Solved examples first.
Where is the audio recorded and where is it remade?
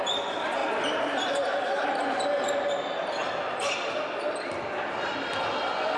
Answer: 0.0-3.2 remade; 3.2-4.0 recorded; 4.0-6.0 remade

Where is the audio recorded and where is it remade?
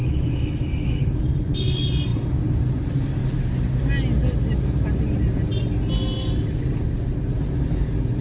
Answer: 0.0-1.2 remade; 1.2-8.2 recorded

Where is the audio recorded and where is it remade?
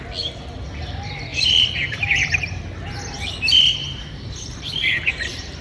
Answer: 0.0-1.3 recorded; 1.3-2.6 remade; 2.6-3.8 recorded; 3.8-5.6 remade